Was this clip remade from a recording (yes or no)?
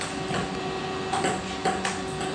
no